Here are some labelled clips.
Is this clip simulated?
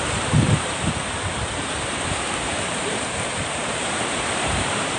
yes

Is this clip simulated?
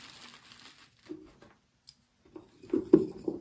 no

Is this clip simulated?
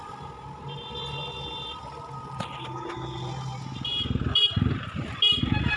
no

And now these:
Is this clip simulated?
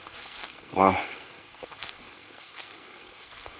yes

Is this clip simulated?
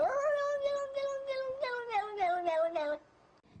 no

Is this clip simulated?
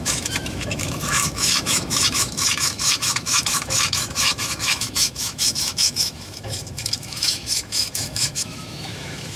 yes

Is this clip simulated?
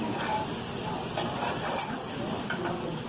no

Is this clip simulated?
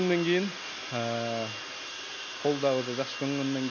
no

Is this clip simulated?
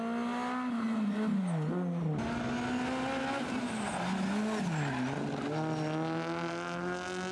no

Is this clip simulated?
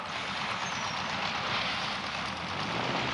no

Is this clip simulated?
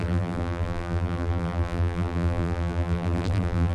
yes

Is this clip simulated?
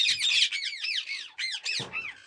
no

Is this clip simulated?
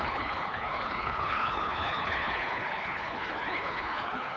yes